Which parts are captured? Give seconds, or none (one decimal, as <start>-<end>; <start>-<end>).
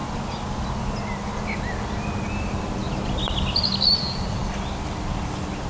0.0-5.7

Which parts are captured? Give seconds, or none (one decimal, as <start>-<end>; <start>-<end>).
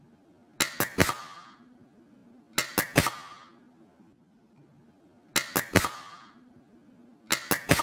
0.0-7.8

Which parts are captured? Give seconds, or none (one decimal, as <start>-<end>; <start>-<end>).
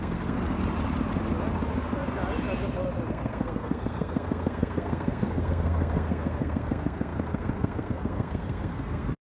0.4-3.1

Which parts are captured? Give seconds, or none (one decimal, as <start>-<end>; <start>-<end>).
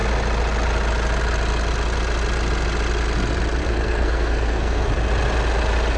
0.0-3.6; 4.9-6.0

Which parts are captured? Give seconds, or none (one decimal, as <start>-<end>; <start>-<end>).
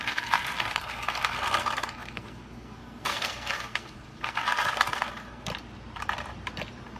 5.5-7.0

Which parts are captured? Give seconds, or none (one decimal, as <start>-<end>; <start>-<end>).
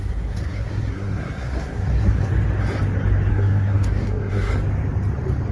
2.3-3.3; 4.5-5.5